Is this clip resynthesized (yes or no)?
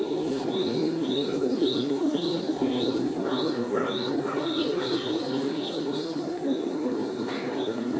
yes